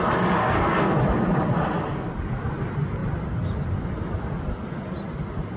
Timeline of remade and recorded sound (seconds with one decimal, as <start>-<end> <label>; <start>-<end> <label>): 0.0-0.4 recorded; 0.4-1.0 remade; 1.0-5.6 recorded